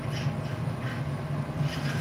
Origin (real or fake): real